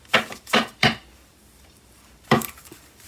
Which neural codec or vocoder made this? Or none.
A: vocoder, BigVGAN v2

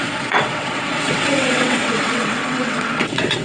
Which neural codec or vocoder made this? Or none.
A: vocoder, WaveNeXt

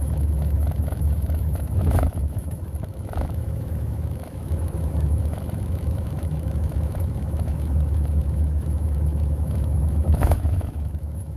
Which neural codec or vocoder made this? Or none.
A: autoencoder, DAC-VAE